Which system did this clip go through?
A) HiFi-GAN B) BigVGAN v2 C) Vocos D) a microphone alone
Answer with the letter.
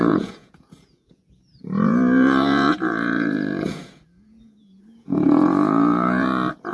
C